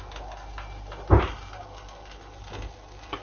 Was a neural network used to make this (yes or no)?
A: no